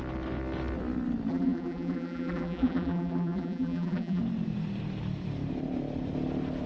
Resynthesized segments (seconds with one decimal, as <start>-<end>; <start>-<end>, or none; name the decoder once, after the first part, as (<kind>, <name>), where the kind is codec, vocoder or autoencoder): 1.3-4.2 (vocoder, BigVGAN v2)